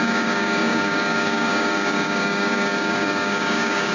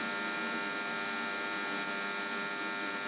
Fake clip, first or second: first